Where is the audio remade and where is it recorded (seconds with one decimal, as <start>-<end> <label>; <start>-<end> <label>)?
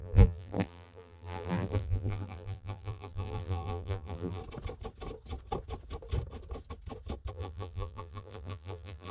0.0-4.4 remade; 4.4-7.3 recorded; 7.3-9.1 remade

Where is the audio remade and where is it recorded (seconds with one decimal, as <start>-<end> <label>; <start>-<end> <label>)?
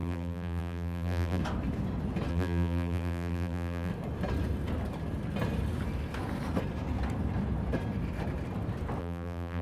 0.0-1.4 remade; 1.4-2.3 recorded; 2.3-3.9 remade; 3.9-9.0 recorded; 9.0-9.6 remade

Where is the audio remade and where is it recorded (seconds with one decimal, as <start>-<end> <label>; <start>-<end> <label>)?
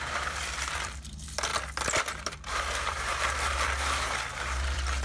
0.0-1.5 remade; 1.5-2.1 recorded; 2.1-5.0 remade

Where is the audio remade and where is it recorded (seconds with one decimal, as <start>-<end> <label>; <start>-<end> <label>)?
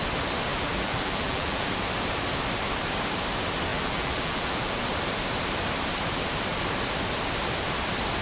0.0-0.5 recorded; 0.5-1.7 remade; 1.7-3.7 recorded; 3.7-4.8 remade; 4.8-8.2 recorded